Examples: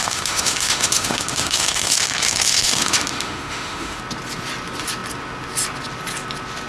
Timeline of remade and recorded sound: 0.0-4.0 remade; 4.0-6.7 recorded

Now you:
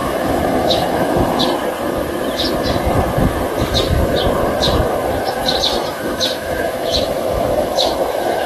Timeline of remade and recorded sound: 0.0-1.4 remade; 1.4-5.7 recorded; 5.7-8.5 remade

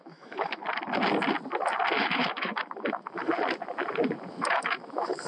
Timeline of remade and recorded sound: 0.0-0.6 remade; 0.6-2.0 recorded; 2.0-3.3 remade; 3.3-4.3 recorded; 4.3-5.3 remade

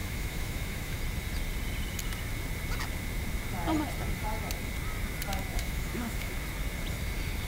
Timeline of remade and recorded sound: 0.0-1.0 remade; 1.0-5.5 recorded; 5.5-6.3 remade; 6.3-7.5 recorded